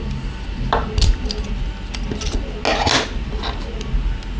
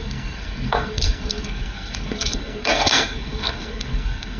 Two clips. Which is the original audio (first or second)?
first